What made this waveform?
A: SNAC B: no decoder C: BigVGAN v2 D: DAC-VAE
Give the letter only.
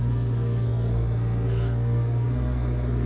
A